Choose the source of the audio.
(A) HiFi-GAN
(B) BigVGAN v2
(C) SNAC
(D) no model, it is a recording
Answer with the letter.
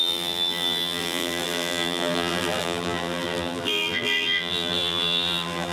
B